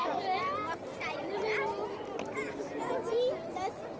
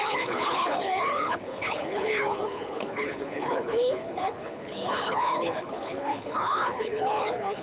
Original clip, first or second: first